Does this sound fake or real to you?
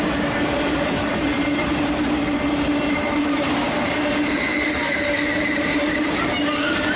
fake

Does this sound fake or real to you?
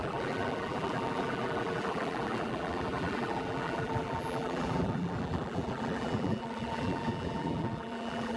fake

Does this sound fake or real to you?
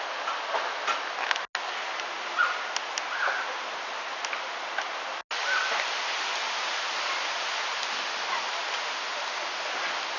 real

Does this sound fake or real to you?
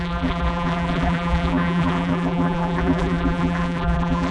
fake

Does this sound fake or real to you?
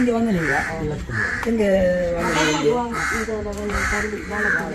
fake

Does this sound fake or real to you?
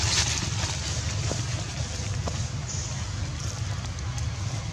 real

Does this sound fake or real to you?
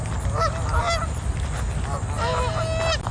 real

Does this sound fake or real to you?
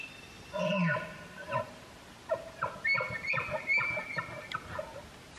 real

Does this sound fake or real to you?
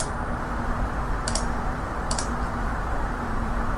fake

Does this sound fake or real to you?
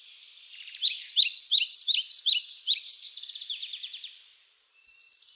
fake